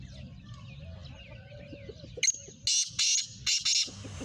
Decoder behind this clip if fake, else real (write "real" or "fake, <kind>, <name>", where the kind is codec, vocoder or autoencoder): real